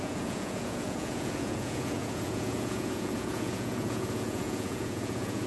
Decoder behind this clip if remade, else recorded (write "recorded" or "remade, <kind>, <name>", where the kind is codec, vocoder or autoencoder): remade, vocoder, Vocos